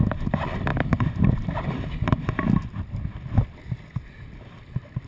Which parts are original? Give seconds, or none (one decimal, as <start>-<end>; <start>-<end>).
0.0-0.7; 1.5-5.1

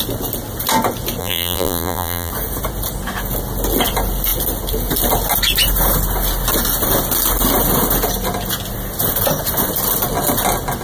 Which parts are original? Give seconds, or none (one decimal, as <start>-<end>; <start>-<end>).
0.0-1.2; 2.3-10.8